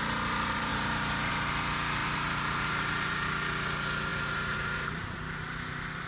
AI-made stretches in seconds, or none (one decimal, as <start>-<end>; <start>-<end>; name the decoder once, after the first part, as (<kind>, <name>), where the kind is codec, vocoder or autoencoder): 0.7-1.3 (vocoder, BigVGAN v2); 2.0-3.3; 4.1-6.1